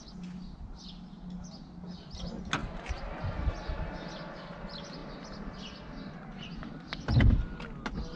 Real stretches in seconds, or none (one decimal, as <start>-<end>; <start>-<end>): 0.0-2.6; 3.9-8.2